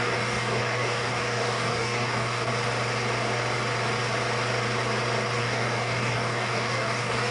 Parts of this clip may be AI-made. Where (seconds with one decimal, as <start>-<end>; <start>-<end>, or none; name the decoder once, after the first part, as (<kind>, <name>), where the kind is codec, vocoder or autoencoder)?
0.0-2.5 (codec, DAC); 5.4-7.3